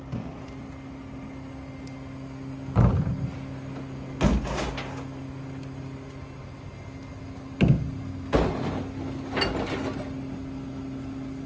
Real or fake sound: real